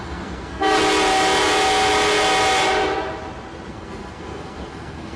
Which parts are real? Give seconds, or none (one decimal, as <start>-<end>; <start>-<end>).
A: 0.8-3.7